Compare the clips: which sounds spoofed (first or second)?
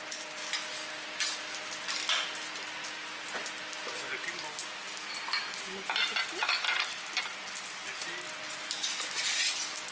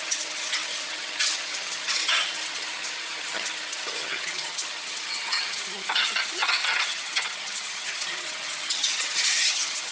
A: second